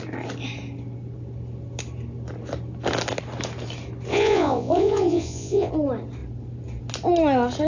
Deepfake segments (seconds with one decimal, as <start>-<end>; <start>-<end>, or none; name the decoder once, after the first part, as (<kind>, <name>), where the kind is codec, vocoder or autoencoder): 4.1-5.7 (vocoder, Vocos)